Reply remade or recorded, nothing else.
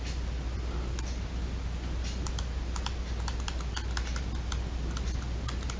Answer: recorded